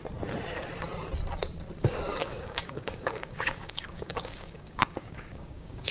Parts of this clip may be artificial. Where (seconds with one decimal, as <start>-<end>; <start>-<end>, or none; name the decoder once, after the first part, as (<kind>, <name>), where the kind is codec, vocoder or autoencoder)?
1.8-5.9 (codec, DAC)